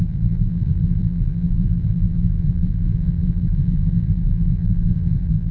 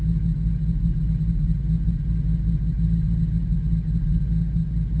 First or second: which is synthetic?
first